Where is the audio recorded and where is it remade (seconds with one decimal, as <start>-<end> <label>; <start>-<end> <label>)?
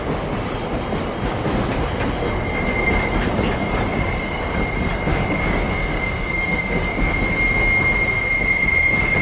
0.0-3.9 recorded; 3.9-4.4 remade; 4.4-5.1 recorded; 5.1-6.9 remade; 6.9-9.2 recorded